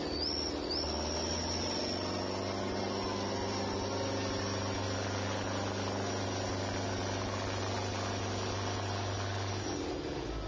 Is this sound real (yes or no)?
yes